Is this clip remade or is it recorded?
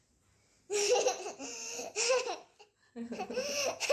recorded